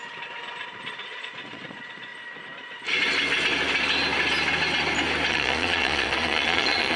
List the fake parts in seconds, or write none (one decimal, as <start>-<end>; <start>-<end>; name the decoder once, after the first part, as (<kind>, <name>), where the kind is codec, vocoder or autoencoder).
1.2-2.1 (vocoder, Vocos); 5.3-7.0